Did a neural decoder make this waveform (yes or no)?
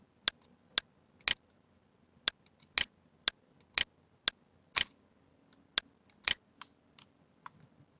no